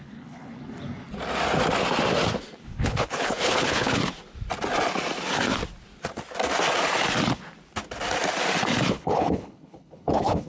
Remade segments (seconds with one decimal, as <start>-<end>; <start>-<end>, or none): 0.0-0.6; 2.6-4.0; 8.9-10.5